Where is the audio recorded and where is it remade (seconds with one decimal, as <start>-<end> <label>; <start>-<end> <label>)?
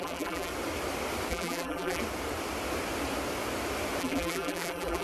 0.0-0.5 remade; 0.5-1.3 recorded; 1.3-2.0 remade; 2.0-4.0 recorded; 4.0-5.0 remade